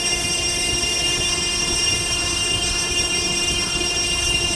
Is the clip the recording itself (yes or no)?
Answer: no